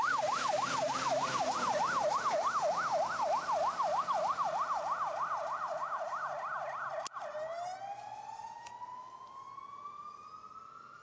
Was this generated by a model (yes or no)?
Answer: no